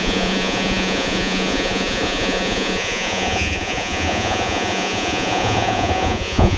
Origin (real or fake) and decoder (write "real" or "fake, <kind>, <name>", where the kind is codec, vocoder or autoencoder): fake, vocoder, Vocos